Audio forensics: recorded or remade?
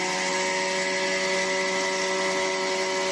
recorded